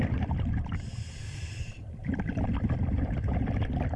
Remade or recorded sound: recorded